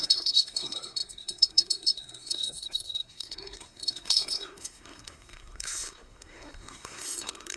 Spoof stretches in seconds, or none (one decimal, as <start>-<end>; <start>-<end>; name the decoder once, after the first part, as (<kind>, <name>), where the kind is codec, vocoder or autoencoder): 0.0-7.6 (codec, SNAC)